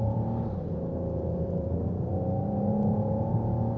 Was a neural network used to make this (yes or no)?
yes